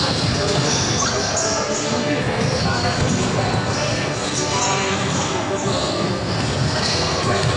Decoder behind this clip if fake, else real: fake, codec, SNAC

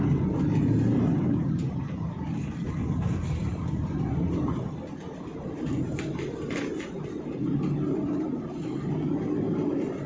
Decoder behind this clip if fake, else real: real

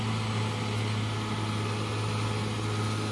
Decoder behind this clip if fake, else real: real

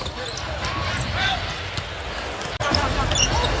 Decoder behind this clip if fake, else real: real